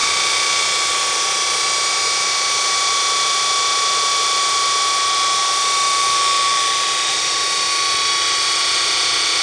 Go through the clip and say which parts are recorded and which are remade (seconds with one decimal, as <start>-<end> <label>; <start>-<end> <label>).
0.0-9.4 recorded